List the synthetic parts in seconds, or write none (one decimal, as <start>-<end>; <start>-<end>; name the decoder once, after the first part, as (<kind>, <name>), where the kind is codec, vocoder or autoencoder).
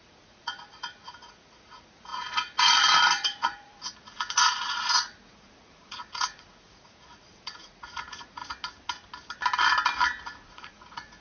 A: 0.0-8.4 (vocoder, Vocos); 10.5-11.2